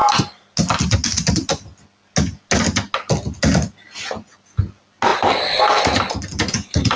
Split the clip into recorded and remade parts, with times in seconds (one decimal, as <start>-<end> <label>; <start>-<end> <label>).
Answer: 0.0-7.0 recorded